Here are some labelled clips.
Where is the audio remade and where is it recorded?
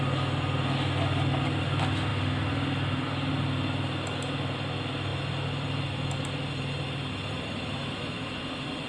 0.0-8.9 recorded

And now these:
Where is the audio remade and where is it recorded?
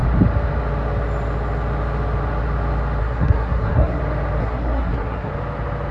0.0-3.0 recorded; 3.0-4.0 remade; 4.0-4.4 recorded; 4.4-5.3 remade; 5.3-5.9 recorded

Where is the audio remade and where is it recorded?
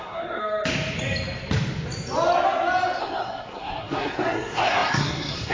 0.0-0.4 remade; 0.4-3.0 recorded; 3.0-5.5 remade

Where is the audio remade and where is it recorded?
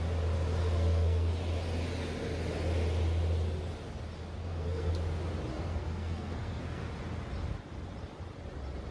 0.0-0.6 recorded; 0.6-1.3 remade; 1.3-4.4 recorded; 4.4-4.9 remade; 4.9-5.5 recorded; 5.5-6.9 remade; 6.9-8.9 recorded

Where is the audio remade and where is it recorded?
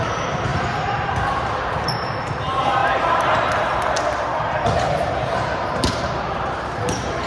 0.0-7.3 remade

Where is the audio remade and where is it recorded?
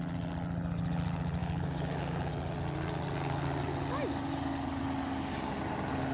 0.0-1.4 recorded; 1.4-2.3 remade; 2.3-6.1 recorded